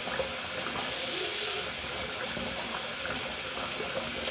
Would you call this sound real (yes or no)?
yes